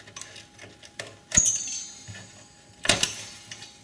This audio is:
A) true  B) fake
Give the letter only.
A